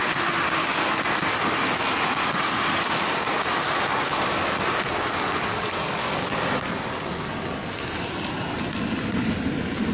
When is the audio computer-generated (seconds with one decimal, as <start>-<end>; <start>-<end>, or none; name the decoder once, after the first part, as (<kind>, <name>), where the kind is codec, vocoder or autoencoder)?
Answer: 5.5-6.3 (codec, DAC)